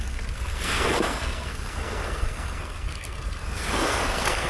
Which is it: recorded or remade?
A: remade